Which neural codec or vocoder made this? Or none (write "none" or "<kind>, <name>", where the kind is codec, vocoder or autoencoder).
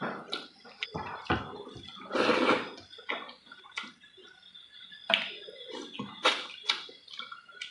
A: none